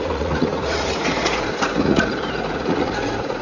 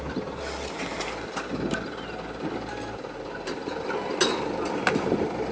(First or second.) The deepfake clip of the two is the first